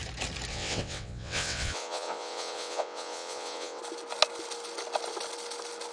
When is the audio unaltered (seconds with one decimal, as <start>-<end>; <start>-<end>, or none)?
0.0-0.5; 3.8-5.9